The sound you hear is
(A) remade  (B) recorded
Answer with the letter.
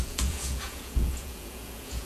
A